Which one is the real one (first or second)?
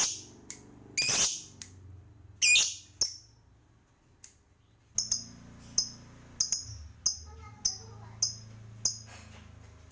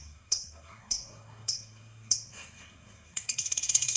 first